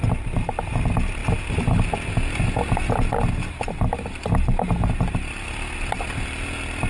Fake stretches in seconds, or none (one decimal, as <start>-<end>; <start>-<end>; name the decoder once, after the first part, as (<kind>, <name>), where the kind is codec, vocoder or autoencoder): none